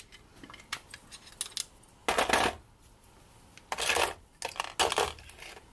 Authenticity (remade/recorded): recorded